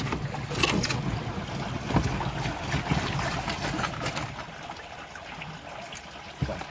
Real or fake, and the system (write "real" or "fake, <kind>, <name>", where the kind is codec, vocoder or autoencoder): real